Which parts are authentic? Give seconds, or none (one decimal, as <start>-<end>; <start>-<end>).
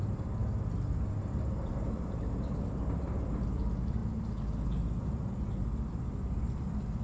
0.0-7.0